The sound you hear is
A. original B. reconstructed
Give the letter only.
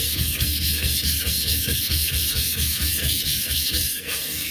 B